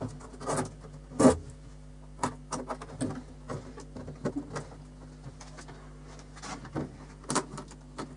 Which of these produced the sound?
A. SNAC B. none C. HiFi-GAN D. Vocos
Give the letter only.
B